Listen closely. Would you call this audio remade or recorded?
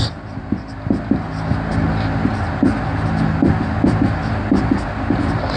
recorded